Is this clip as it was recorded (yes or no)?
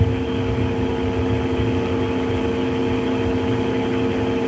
yes